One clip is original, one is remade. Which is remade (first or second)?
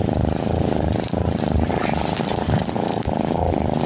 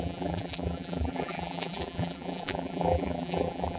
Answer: second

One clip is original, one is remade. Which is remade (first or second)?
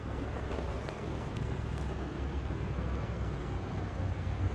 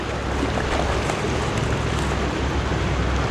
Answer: first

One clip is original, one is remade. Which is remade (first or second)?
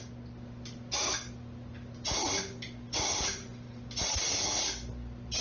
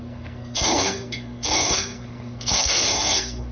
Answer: second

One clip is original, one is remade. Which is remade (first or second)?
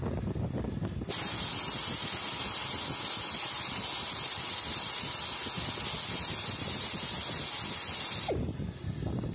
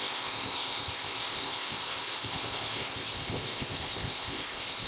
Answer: second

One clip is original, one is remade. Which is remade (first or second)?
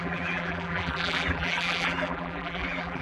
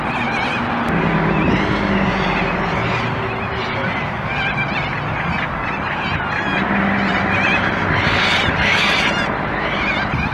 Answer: first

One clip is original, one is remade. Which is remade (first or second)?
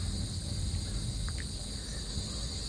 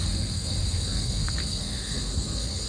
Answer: second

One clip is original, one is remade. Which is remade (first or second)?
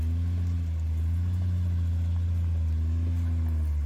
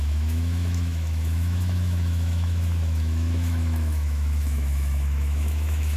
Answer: second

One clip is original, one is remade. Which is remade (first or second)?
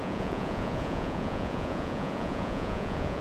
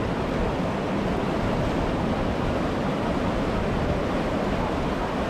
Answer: first